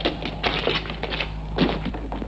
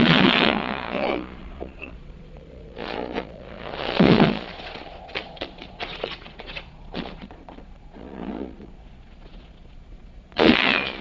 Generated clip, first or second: second